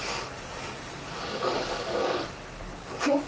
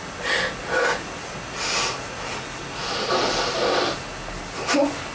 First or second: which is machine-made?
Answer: first